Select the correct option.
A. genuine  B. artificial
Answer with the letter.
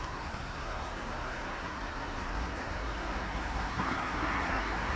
B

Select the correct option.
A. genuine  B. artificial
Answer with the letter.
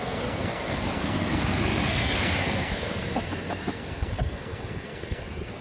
B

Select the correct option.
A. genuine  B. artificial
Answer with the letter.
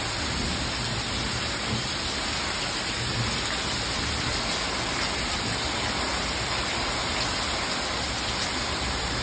A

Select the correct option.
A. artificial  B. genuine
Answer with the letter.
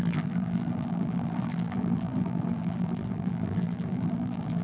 A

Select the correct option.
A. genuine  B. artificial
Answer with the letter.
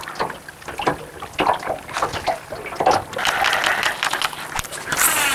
A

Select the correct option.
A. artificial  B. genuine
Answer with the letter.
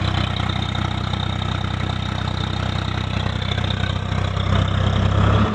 B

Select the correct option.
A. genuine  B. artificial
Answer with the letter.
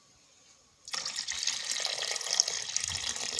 A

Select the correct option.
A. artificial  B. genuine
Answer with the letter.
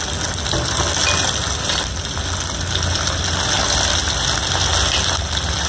B